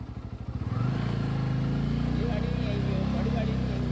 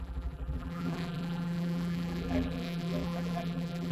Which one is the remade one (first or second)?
second